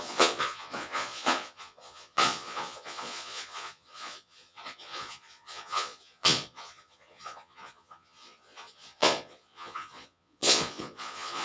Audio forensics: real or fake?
fake